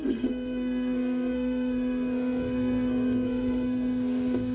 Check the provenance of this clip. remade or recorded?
remade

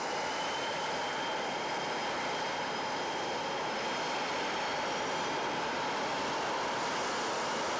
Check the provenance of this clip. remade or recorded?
recorded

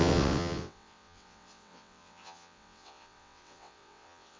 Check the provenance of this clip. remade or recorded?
remade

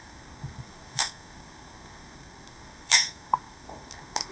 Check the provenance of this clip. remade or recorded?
remade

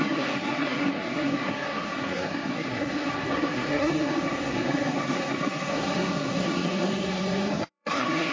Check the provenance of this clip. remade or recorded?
remade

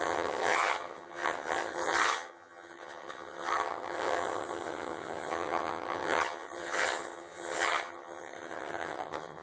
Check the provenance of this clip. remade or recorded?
remade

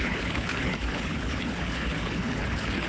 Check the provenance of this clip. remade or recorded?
remade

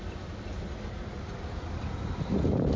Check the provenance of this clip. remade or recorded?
recorded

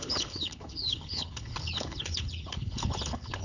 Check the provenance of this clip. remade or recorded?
remade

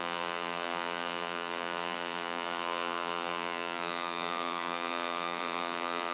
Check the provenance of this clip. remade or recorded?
remade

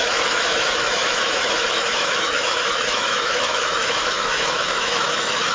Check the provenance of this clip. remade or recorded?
remade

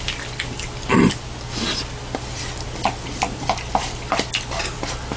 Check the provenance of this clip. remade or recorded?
recorded